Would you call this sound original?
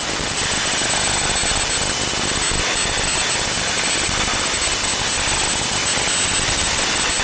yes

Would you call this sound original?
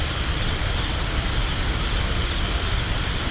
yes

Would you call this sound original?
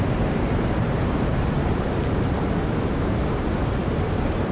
no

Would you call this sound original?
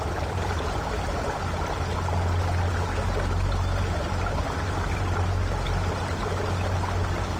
yes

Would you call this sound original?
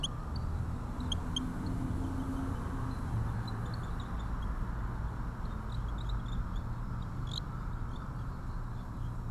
yes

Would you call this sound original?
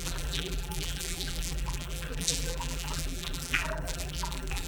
no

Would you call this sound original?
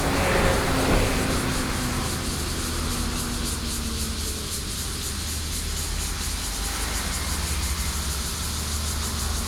yes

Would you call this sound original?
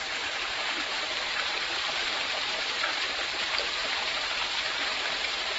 no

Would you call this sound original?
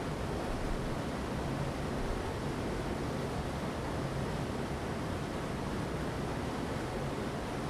yes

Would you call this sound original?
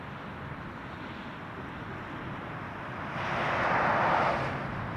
yes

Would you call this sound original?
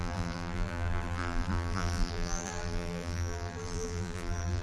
no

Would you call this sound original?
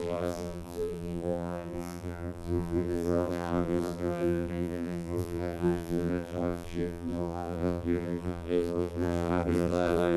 no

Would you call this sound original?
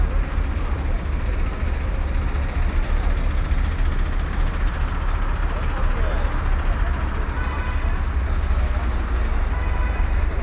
yes